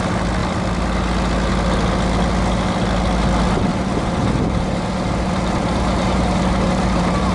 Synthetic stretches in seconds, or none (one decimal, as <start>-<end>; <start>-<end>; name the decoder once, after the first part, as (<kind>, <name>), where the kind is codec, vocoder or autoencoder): 3.7-7.3 (vocoder, BigVGAN v2)